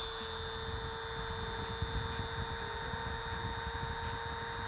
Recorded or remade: recorded